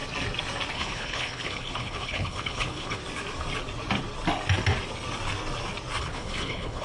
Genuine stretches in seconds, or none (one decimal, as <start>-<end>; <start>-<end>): 0.0-0.7; 3.0-6.0